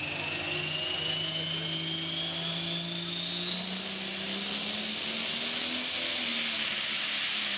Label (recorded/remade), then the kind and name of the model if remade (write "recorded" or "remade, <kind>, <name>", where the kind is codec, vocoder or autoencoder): recorded